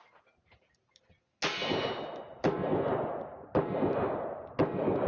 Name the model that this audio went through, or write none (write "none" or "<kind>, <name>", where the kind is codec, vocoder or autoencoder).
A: none